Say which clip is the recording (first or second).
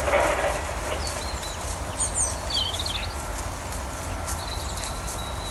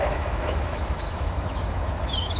first